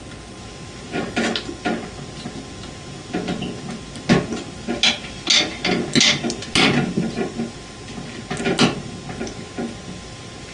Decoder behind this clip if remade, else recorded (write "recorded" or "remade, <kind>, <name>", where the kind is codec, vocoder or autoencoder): recorded